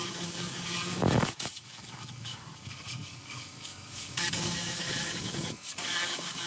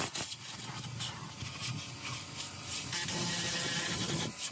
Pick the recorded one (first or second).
second